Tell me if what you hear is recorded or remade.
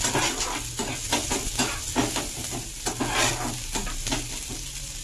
recorded